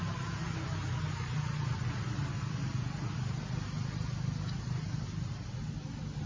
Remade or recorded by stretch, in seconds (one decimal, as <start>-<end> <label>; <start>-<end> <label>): 0.0-6.3 recorded